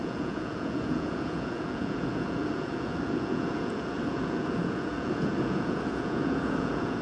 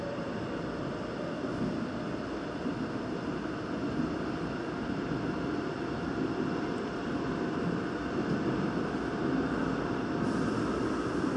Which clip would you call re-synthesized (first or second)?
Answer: first